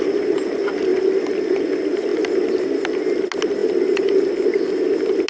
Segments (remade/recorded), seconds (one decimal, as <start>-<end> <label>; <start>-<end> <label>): 0.0-5.3 recorded